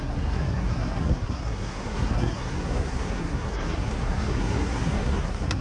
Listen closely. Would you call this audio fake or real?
fake